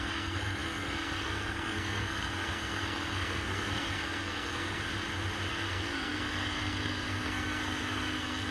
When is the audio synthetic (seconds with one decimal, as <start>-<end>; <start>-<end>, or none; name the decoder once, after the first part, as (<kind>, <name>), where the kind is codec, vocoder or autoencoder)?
0.0-4.9 (codec, SNAC); 5.5-8.5